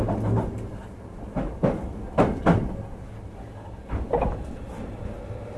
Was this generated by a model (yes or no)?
no